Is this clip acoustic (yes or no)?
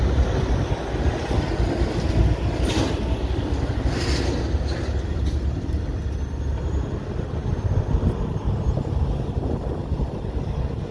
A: yes